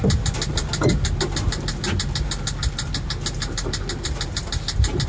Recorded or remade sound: recorded